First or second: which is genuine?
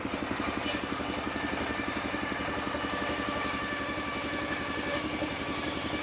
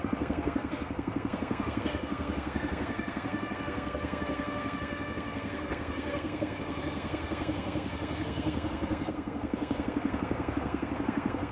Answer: first